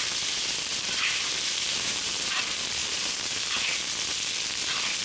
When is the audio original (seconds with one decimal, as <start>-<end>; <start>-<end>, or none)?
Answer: 0.0-0.7; 2.4-2.8; 3.8-5.0